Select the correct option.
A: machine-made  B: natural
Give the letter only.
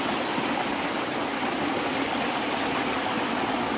B